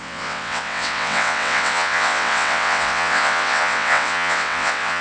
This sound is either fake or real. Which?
fake